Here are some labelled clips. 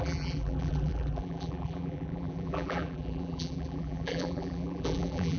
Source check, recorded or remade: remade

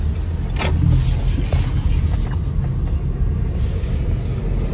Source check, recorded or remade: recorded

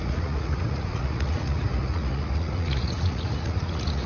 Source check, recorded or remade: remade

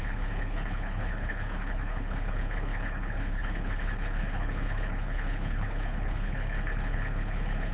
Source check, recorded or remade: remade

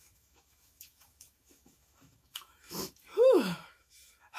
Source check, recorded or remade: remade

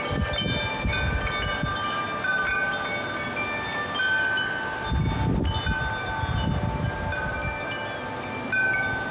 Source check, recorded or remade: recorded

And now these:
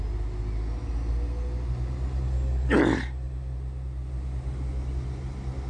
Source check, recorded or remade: recorded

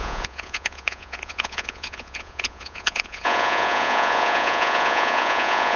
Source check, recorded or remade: remade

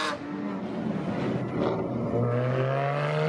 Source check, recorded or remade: recorded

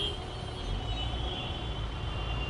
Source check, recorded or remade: recorded